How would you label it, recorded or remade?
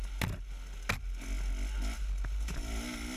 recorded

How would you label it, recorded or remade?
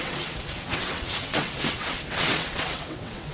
remade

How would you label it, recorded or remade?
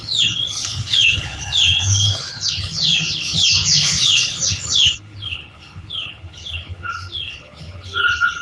remade